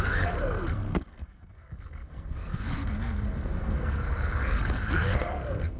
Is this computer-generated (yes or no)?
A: yes